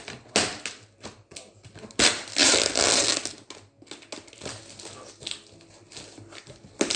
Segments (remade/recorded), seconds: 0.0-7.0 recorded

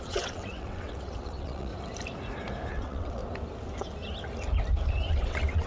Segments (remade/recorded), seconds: 0.0-1.7 remade; 1.7-2.7 recorded; 2.7-3.2 remade; 3.2-5.1 recorded; 5.1-5.7 remade

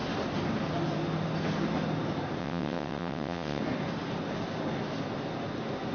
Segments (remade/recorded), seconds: 0.0-2.4 recorded; 2.4-3.6 remade; 3.6-5.9 recorded